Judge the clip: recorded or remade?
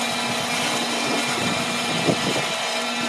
recorded